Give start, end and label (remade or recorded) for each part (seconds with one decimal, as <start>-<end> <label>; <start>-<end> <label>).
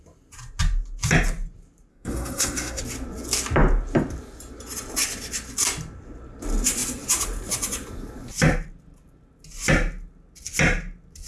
0.0-1.9 recorded; 1.9-2.8 remade; 2.8-11.3 recorded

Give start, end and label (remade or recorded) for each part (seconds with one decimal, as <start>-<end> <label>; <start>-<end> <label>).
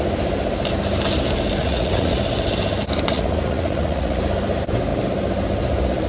0.0-1.6 recorded; 1.6-2.1 remade; 2.1-3.1 recorded; 3.1-4.2 remade; 4.2-6.1 recorded